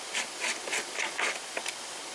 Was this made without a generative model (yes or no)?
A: yes